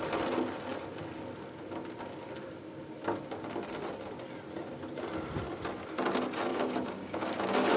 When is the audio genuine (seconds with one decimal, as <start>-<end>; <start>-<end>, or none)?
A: 0.0-6.5